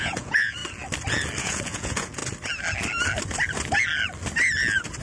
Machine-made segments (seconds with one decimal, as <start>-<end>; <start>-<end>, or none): 0.0-0.6; 1.4-2.2